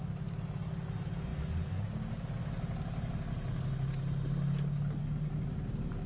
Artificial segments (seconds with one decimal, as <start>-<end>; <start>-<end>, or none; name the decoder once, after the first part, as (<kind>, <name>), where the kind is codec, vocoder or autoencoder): none